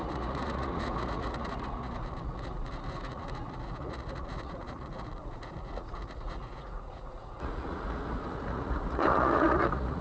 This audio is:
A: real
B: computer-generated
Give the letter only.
B